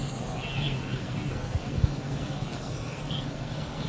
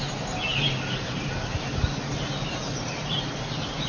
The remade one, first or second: first